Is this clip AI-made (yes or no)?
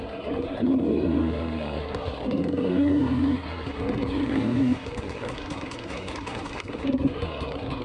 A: yes